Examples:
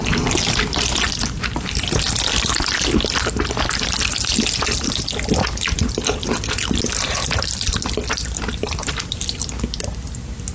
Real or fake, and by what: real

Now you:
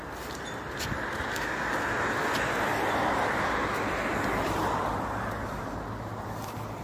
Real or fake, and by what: real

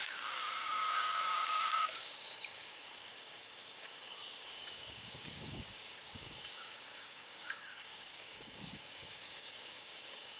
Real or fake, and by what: fake, codec, DAC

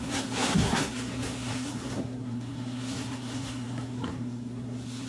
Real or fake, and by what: fake, codec, SNAC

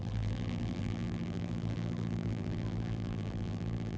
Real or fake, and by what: fake, vocoder, BigVGAN v2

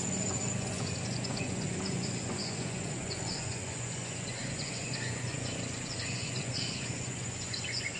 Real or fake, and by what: fake, vocoder, Vocos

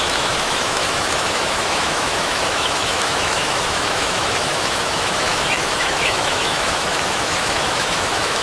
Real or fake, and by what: fake, autoencoder, DAC-VAE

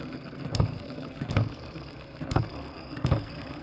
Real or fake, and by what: fake, codec, SNAC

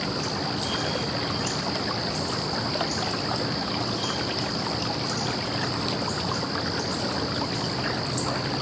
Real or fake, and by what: real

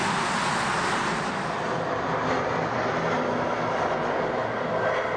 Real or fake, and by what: real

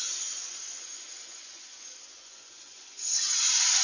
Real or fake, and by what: fake, vocoder, Vocos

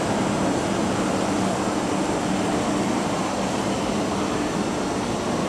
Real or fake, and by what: real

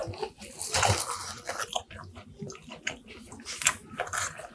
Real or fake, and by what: real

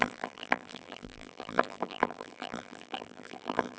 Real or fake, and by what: fake, vocoder, BigVGAN v2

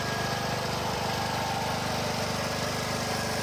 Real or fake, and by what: real